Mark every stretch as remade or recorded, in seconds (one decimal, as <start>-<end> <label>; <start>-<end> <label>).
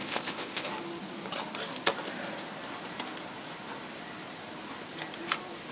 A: 0.0-0.7 remade; 0.7-5.7 recorded